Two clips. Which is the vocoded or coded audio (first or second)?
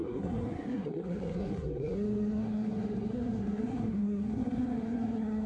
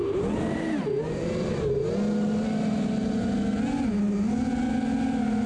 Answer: first